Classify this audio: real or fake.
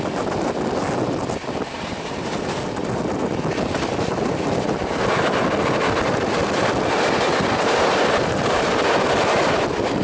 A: real